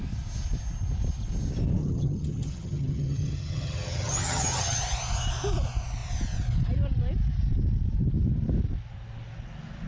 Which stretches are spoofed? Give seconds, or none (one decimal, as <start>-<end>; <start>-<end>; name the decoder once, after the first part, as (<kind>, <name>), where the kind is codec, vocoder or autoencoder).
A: 1.8-4.8 (vocoder, HiFi-GAN)

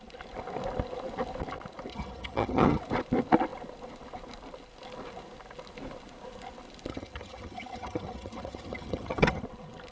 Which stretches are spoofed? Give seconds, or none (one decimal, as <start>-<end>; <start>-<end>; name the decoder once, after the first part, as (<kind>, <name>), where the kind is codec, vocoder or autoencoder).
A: 1.9-2.8 (vocoder, HiFi-GAN); 6.9-9.4

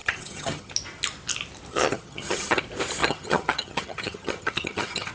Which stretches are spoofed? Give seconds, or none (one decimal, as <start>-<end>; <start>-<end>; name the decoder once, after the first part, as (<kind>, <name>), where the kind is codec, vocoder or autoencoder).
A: 0.0-0.7 (vocoder, HiFi-GAN); 1.7-2.6; 3.0-5.1

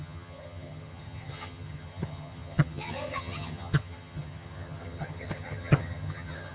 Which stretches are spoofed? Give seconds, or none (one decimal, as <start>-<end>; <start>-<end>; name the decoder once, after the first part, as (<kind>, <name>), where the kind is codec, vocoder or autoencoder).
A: 0.0-6.5 (vocoder, HiFi-GAN)

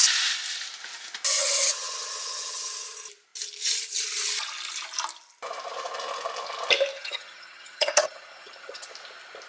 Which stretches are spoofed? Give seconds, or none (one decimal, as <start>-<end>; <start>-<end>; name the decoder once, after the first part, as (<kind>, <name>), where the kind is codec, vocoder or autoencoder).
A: 1.4-2.7 (vocoder, HiFi-GAN); 6.9-8.9

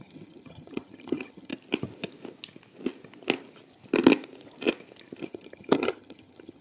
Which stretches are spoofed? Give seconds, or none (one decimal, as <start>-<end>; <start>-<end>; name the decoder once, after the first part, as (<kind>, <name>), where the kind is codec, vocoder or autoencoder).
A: 0.0-1.5 (vocoder, HiFi-GAN); 5.2-6.6

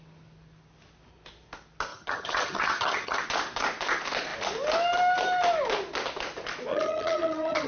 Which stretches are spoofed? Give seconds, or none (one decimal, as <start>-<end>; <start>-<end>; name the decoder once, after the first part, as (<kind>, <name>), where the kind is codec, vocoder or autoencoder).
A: 1.9-3.2 (vocoder, HiFi-GAN); 6.7-7.7

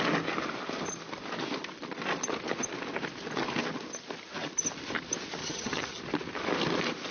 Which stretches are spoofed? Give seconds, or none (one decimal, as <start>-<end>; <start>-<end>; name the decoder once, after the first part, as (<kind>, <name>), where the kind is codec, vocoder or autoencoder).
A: 5.4-6.0 (vocoder, HiFi-GAN)